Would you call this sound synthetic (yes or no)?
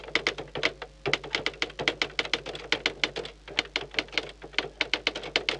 no